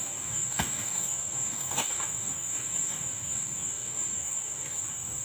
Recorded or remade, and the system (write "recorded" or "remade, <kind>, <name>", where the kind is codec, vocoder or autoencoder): remade, codec, DAC